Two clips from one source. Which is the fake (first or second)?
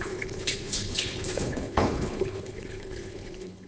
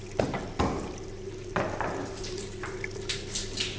first